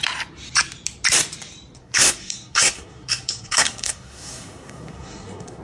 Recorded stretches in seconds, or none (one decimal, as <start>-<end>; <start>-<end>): 0.0-1.8